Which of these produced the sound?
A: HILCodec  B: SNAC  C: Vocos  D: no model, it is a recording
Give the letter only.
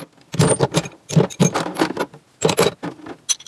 D